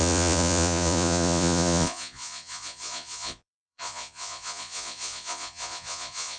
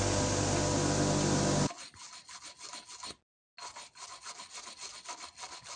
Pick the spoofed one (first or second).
first